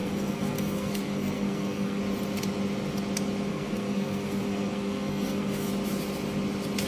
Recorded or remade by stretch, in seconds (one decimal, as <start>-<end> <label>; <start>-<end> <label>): 0.0-2.0 remade; 2.0-3.5 recorded; 3.5-5.7 remade; 5.7-6.9 recorded